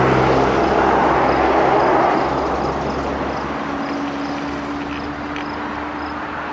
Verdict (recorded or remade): recorded